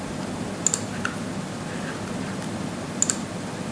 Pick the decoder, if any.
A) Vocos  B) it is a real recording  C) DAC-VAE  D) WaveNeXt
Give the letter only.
B